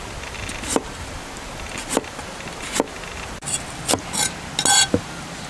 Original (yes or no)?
yes